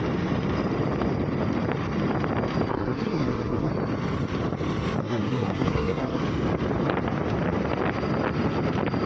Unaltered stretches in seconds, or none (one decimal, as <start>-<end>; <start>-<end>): 0.0-2.7; 3.7-5.0; 6.2-9.1

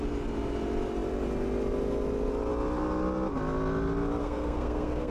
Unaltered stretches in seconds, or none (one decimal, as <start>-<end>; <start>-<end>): 0.0-4.2

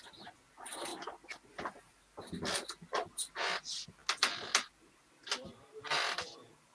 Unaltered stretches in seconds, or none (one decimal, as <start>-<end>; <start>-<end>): 0.0-6.7

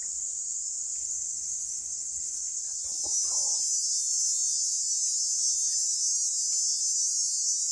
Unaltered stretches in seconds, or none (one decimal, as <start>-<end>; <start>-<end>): 0.0-1.0; 2.6-7.7

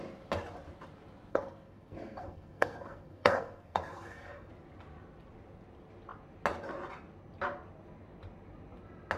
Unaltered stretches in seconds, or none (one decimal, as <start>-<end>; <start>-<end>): 0.0-1.3; 4.5-9.2

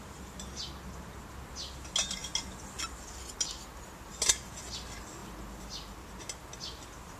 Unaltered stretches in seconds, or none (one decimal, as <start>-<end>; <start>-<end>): 0.0-7.2

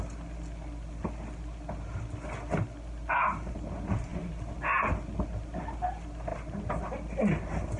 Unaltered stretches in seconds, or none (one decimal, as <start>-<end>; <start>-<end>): 0.0-7.8